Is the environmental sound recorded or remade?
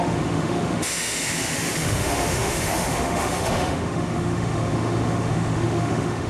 remade